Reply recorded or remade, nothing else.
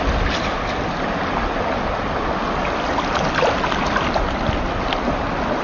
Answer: recorded